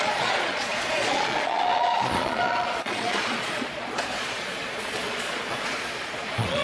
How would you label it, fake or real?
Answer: fake